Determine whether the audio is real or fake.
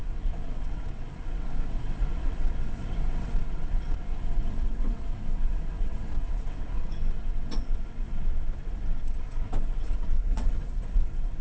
fake